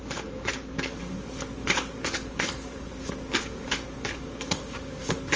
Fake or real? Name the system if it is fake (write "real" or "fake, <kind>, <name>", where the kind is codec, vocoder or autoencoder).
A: fake, codec, DAC